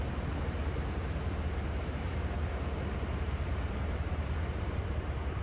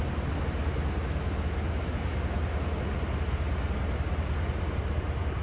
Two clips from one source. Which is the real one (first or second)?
second